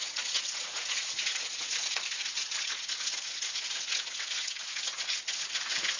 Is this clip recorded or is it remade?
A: remade